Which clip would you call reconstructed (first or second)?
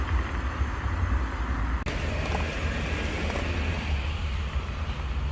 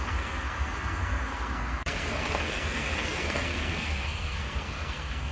second